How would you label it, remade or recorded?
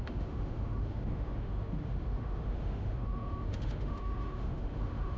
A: remade